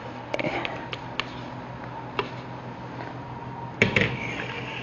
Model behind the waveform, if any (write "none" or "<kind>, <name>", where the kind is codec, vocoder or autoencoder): none